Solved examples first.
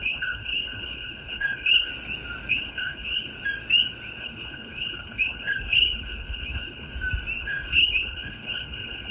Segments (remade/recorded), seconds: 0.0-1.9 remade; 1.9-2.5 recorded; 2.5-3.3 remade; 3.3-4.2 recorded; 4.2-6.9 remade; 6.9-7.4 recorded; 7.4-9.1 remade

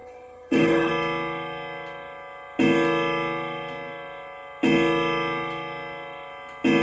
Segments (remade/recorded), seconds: 0.0-0.9 remade; 0.9-6.8 recorded

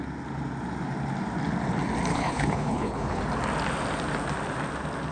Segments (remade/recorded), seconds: 0.0-2.1 recorded; 2.1-3.2 remade; 3.2-5.1 recorded

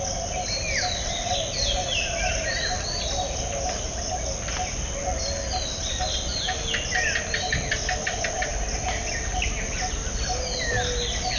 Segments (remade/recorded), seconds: 0.0-11.4 recorded

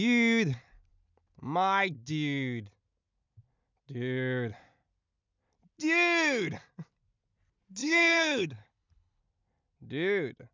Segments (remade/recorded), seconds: 0.0-7.8 recorded; 7.8-9.2 remade; 9.2-10.5 recorded

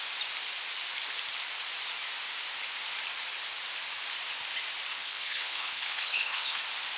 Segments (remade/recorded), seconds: 0.0-4.9 recorded; 4.9-6.6 remade; 6.6-7.0 recorded

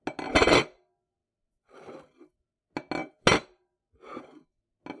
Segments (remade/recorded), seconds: 0.0-5.0 recorded

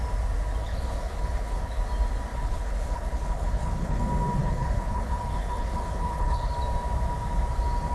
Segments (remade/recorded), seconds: 0.0-0.6 recorded; 0.6-1.8 remade; 1.8-2.3 recorded; 2.3-4.0 remade; 4.0-4.4 recorded; 4.4-6.5 remade; 6.5-7.9 recorded